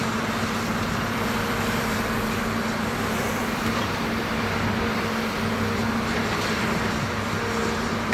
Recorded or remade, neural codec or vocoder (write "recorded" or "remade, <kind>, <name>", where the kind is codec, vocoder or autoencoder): remade, vocoder, BigVGAN v2